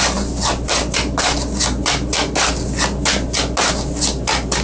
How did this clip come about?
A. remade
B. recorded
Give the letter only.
B